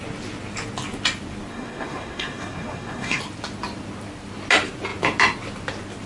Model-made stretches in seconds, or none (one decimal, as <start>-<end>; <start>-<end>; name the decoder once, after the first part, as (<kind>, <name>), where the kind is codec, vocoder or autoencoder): 1.5-3.2 (codec, SNAC)